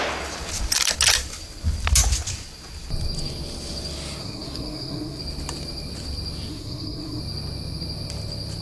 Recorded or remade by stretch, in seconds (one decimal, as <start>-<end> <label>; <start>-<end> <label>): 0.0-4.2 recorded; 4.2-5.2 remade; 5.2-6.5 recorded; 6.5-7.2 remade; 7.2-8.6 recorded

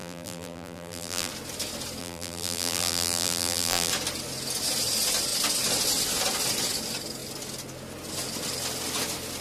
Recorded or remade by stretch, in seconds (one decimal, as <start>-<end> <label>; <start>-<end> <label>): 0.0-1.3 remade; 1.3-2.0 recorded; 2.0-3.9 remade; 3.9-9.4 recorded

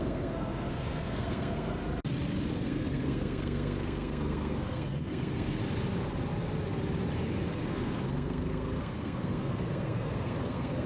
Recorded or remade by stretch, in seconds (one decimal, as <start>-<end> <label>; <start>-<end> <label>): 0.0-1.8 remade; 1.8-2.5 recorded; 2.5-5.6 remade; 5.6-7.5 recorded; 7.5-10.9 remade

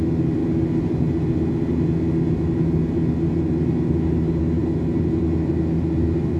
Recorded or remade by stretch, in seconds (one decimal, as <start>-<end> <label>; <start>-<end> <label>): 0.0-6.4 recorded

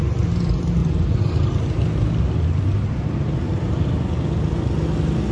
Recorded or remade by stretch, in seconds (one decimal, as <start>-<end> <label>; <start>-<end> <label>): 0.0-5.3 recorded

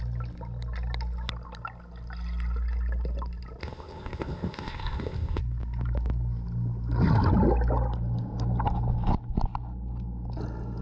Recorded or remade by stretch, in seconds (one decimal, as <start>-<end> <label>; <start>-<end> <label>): 0.0-3.6 recorded; 3.6-5.4 remade; 5.4-10.8 recorded

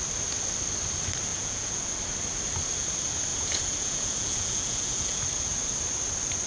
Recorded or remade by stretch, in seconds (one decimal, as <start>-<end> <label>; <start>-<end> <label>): 0.0-1.3 recorded; 1.3-1.9 remade; 1.9-3.3 recorded; 3.3-5.2 remade; 5.2-6.5 recorded

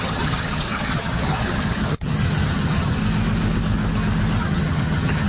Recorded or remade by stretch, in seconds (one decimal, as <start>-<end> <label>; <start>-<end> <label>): 0.0-3.0 remade; 3.0-4.4 recorded; 4.4-5.3 remade